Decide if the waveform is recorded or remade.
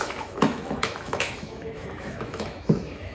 remade